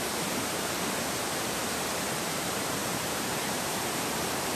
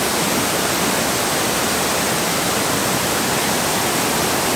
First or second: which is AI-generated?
first